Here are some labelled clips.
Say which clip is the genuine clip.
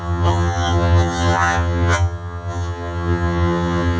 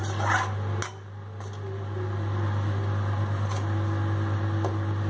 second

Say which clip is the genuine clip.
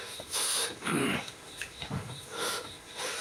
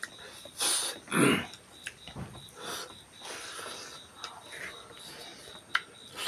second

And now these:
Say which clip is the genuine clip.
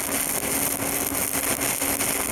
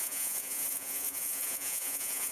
first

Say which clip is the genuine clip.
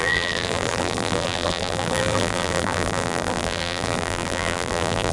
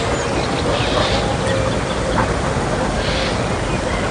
second